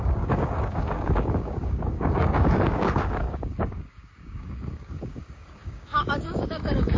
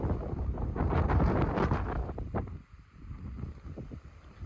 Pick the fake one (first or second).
first